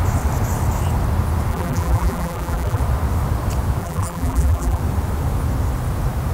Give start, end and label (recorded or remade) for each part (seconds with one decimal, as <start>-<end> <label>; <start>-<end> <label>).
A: 0.0-1.5 recorded; 1.5-2.8 remade; 2.8-3.8 recorded; 3.8-4.8 remade; 4.8-6.3 recorded